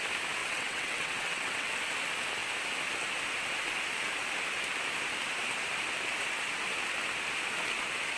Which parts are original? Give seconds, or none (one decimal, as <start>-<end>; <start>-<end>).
0.0-0.4; 1.7-8.2